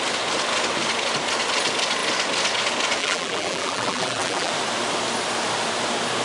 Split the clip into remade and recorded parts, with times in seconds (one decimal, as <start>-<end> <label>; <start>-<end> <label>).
0.0-3.0 recorded; 3.0-4.5 remade; 4.5-6.2 recorded